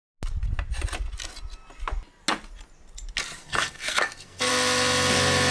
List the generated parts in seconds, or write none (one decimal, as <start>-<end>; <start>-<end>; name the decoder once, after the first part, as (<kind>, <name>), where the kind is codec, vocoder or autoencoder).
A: 3.4-4.5 (codec, SNAC)